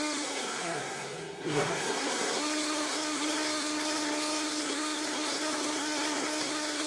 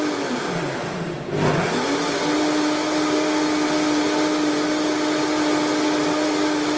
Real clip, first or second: second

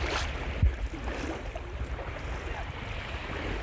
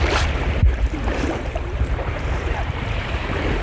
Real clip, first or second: first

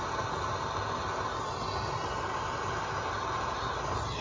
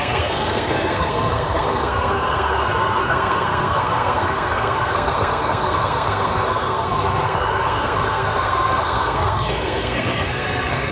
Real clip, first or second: first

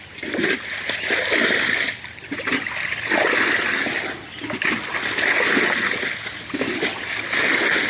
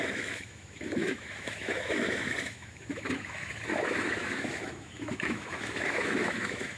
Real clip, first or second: first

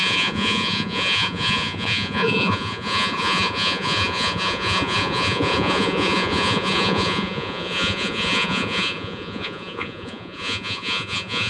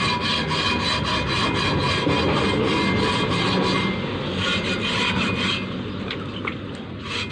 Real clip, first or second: second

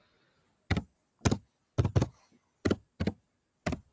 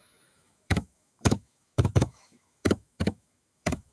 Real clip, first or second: first